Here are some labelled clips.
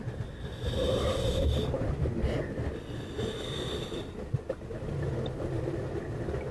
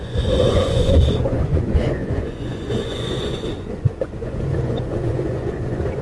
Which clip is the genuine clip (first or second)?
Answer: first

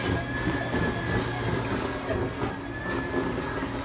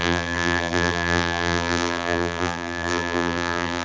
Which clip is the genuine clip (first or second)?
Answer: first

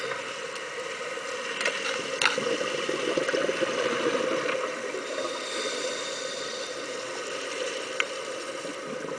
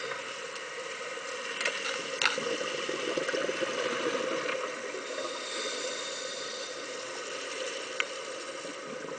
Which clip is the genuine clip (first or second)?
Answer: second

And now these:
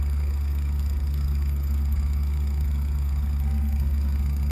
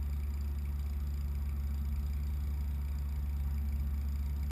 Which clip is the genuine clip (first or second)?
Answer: second